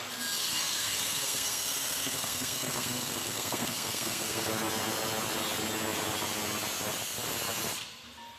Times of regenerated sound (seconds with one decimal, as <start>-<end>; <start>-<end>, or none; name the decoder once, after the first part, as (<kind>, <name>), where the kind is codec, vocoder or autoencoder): 0.4-4.5 (codec, SNAC)